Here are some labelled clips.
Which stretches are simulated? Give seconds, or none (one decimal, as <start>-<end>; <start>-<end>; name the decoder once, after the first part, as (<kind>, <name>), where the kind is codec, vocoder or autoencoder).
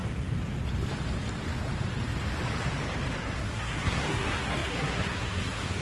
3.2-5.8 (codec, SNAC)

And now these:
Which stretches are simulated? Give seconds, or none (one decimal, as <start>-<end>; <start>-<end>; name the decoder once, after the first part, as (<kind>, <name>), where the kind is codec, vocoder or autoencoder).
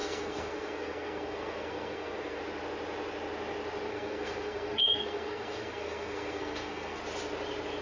0.0-2.4 (codec, SNAC); 3.9-7.0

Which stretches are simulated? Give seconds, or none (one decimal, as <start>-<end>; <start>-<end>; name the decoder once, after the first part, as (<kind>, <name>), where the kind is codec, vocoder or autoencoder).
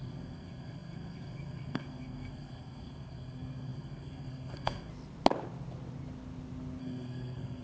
0.0-4.9 (codec, SNAC); 6.8-7.6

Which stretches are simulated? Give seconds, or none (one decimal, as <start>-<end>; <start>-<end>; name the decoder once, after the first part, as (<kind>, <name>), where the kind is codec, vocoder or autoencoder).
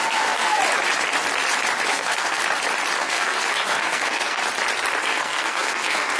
0.0-0.6 (codec, SNAC); 1.9-2.4; 3.0-4.4; 5.0-6.2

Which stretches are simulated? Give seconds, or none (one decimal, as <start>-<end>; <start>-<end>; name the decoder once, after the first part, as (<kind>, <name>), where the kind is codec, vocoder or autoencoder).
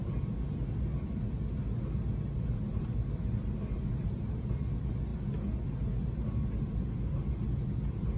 none